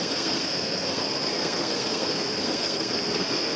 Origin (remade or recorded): remade